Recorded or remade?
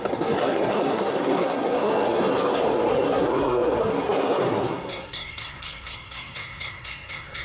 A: remade